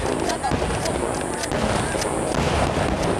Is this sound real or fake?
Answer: real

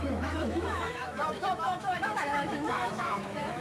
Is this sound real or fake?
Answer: fake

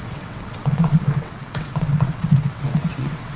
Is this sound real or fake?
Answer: fake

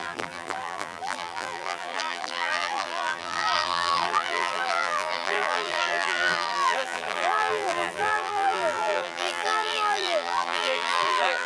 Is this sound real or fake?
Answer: fake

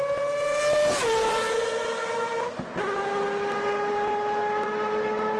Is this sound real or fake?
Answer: real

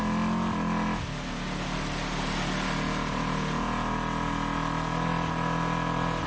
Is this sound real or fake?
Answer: real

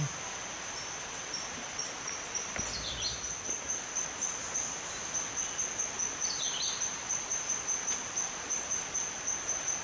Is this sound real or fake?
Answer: real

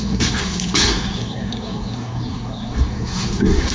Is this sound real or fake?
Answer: fake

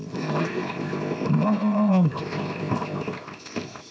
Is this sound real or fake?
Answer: fake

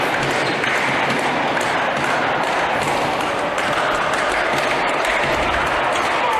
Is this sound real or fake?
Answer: real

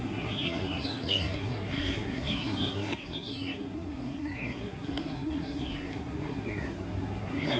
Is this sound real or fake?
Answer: fake